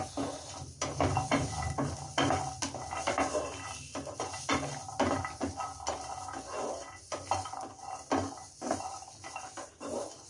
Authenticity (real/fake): real